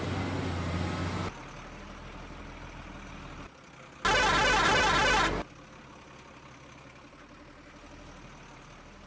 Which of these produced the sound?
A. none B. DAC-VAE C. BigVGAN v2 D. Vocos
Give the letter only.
A